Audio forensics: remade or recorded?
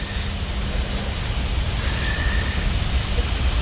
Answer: recorded